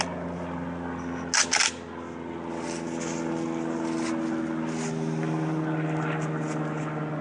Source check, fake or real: real